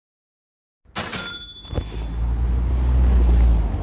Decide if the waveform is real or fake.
real